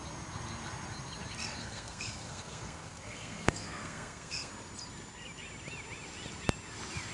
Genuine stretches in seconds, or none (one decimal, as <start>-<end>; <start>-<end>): 0.0-1.6; 4.5-7.1